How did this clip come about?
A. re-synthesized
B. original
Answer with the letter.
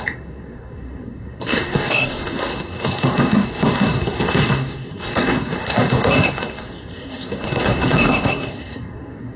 A